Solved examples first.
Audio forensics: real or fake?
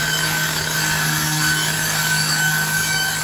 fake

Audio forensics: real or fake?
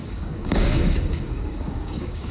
fake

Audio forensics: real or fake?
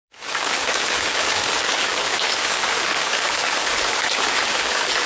fake